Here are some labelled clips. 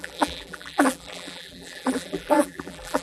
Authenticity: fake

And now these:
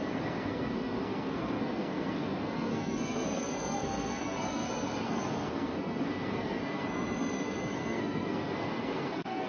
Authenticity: fake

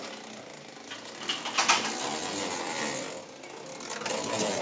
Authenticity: real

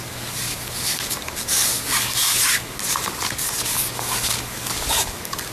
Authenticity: fake